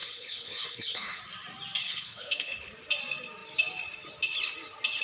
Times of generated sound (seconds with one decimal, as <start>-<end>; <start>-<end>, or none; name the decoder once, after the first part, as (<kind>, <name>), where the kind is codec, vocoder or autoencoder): 0.0-1.2 (codec, HILCodec); 1.8-2.7